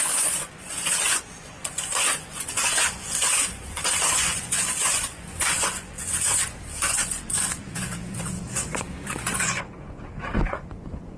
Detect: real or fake fake